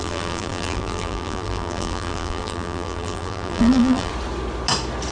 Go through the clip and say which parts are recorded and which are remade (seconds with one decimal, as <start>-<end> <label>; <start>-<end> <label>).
0.0-4.1 remade; 4.1-5.1 recorded